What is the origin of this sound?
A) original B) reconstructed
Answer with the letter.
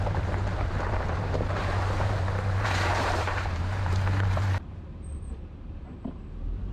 B